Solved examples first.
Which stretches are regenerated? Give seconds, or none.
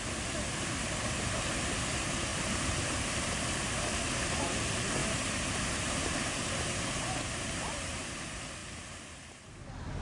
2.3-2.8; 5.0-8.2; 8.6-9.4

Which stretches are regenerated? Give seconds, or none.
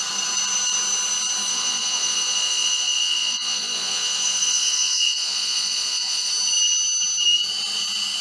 1.5-6.3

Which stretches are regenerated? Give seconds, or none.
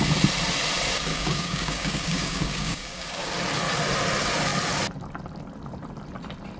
1.1-3.3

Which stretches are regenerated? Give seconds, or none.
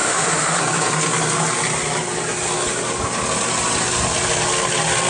0.0-0.6